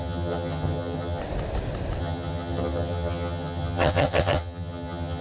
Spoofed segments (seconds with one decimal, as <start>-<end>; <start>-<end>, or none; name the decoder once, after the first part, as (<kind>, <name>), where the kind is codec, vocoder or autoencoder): 0.0-1.2 (vocoder, HiFi-GAN); 2.0-5.2